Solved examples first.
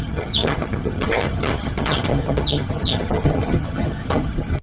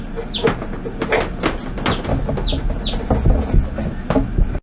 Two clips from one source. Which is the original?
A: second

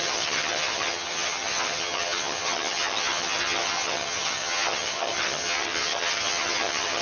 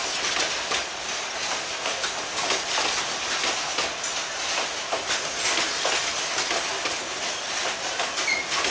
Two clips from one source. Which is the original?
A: second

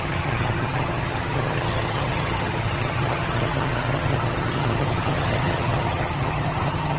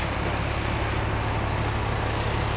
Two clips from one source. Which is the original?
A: second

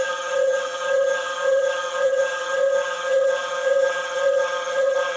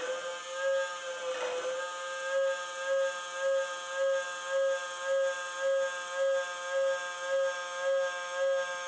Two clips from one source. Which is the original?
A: second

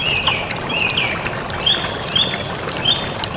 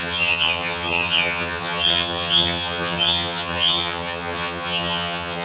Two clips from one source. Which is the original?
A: first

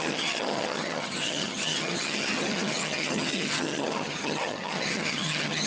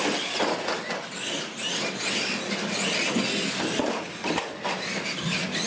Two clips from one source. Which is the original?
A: second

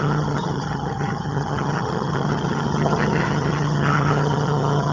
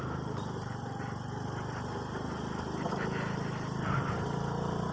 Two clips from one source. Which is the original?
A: second